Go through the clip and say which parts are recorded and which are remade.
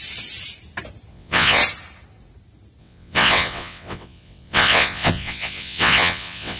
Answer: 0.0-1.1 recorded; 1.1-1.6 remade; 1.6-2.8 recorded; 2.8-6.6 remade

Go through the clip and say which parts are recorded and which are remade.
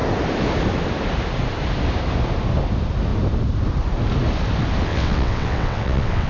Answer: 0.0-4.9 recorded; 4.9-6.3 remade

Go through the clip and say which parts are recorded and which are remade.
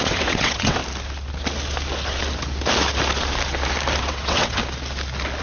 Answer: 0.0-0.8 remade; 0.8-4.0 recorded; 4.0-4.6 remade; 4.6-5.4 recorded